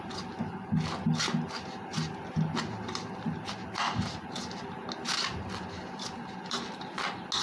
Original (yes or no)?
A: yes